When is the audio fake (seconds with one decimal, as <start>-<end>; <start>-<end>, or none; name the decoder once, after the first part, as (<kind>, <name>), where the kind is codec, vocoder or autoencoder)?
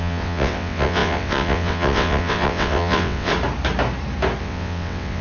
0.0-3.3 (vocoder, WaveNeXt); 4.4-5.2